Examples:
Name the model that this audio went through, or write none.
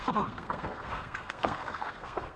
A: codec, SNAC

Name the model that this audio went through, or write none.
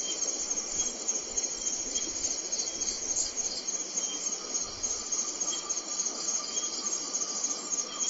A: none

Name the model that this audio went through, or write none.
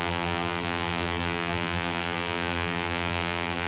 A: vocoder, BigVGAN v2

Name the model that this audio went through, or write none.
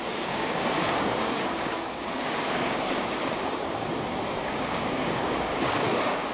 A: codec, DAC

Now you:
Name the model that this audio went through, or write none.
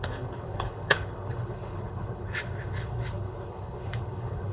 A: codec, HILCodec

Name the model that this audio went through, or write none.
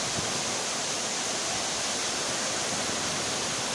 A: none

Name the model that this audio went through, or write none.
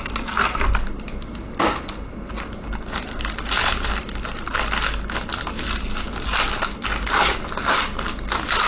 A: none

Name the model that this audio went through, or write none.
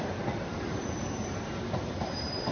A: vocoder, BigVGAN v2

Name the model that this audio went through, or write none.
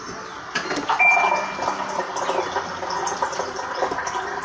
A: none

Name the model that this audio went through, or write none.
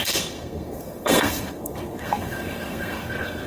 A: codec, SNAC